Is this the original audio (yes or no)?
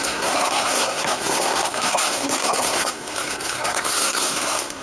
no